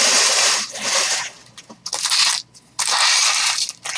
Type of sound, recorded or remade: recorded